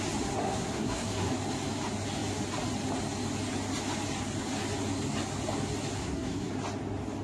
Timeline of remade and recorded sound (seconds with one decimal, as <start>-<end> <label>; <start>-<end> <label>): 0.0-0.4 recorded; 0.4-1.3 remade; 1.3-6.0 recorded; 6.0-6.5 remade; 6.5-7.2 recorded